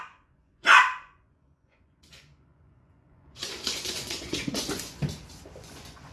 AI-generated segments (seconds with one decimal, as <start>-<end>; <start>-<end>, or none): 0.0-5.0; 5.6-6.1